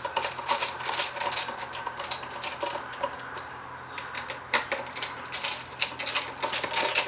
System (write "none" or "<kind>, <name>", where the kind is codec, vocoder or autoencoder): none